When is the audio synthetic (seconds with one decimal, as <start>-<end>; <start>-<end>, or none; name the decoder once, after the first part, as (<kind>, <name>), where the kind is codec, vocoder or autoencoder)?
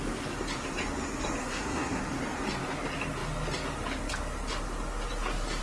1.4-2.0 (codec, SNAC)